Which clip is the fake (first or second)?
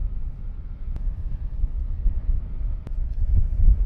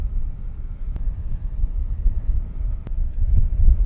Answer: second